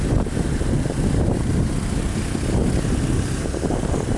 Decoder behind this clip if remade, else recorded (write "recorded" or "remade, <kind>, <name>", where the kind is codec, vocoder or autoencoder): recorded